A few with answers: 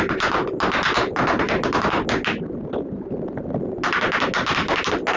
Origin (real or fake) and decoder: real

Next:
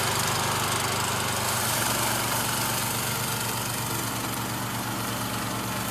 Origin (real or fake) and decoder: real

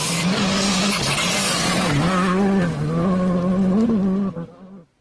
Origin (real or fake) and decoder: real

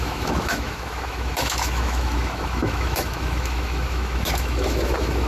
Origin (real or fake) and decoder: fake, autoencoder, DAC-VAE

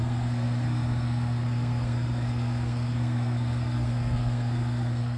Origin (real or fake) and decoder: fake, codec, SNAC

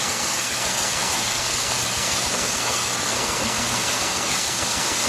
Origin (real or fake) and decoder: fake, codec, SNAC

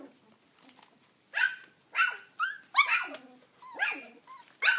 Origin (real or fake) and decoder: real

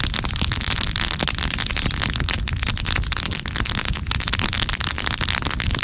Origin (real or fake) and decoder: real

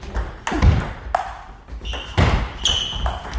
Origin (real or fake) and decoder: real